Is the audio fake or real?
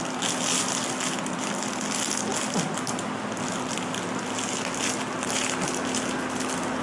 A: real